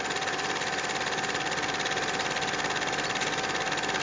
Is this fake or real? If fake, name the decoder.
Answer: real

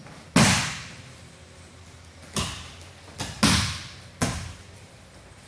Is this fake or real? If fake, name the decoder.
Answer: real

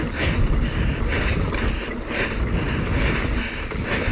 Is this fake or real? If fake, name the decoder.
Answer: real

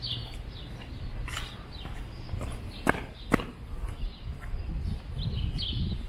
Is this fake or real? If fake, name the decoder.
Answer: real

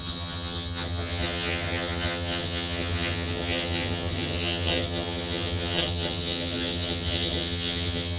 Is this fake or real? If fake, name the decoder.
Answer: fake, vocoder, HiFi-GAN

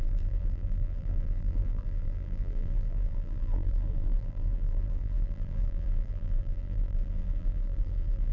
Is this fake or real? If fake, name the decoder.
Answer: fake, vocoder, BigVGAN v2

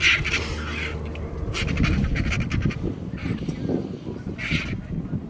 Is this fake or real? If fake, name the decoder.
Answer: real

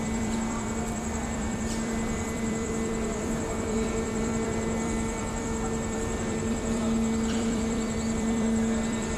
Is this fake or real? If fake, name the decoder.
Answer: fake, vocoder, BigVGAN v2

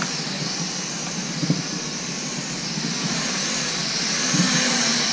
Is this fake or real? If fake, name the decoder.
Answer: real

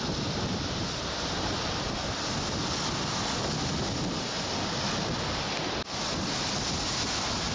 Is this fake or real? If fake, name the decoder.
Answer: real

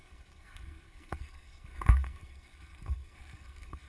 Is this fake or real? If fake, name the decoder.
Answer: fake, codec, SNAC